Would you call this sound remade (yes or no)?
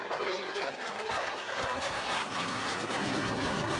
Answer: yes